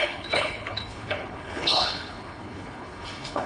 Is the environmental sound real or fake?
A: fake